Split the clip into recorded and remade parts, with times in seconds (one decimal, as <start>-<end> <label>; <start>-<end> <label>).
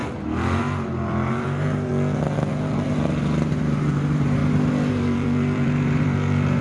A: 0.0-0.6 recorded; 0.6-1.9 remade; 1.9-2.5 recorded; 2.5-4.4 remade; 4.4-4.9 recorded; 4.9-6.6 remade